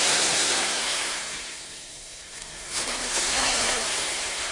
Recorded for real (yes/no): no